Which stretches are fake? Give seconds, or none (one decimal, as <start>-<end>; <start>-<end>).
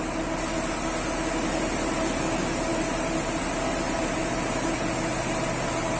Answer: none